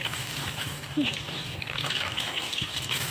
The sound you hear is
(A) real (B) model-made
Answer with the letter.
B